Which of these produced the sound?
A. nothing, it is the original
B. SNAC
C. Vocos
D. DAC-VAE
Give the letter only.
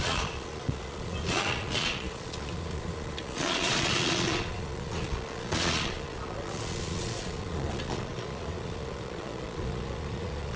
C